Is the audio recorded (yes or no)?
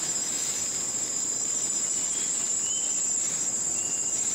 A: yes